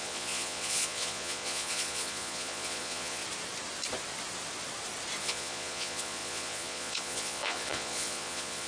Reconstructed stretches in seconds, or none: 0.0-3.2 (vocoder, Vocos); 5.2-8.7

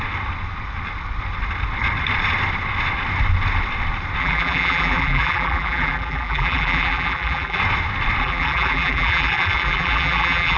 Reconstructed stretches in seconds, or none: 4.2-7.6 (vocoder, BigVGAN v2); 8.2-10.6

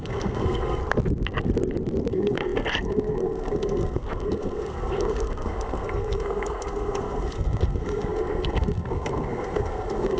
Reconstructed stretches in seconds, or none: 0.0-0.8 (codec, SNAC); 2.1-10.2

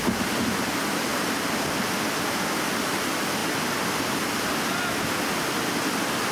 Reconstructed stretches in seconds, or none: none

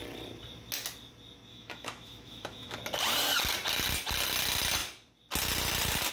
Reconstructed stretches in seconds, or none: 1.5-2.8 (autoencoder, DAC-VAE)